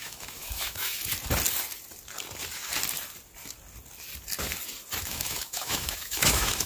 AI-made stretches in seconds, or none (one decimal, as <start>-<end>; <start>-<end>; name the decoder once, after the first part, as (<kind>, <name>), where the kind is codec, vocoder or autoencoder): 0.0-1.0 (autoencoder, DAC-VAE); 5.0-6.7